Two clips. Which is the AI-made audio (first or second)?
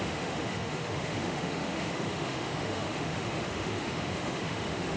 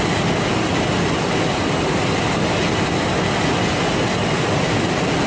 first